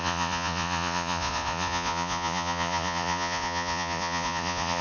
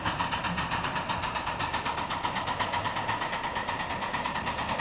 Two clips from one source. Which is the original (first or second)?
second